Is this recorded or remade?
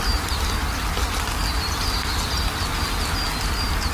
recorded